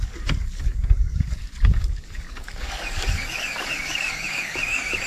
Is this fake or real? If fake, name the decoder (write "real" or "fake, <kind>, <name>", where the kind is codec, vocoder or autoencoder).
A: fake, codec, DAC